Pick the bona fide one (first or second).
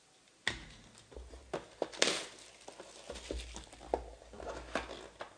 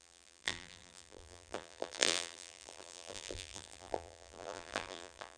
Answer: first